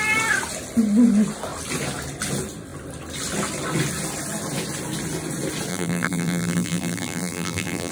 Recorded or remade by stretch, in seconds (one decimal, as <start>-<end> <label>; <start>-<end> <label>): 0.0-5.7 recorded; 5.7-7.9 remade